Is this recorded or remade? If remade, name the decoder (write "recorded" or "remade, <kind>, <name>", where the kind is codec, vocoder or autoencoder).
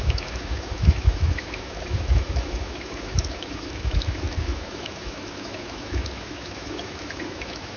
remade, autoencoder, DAC-VAE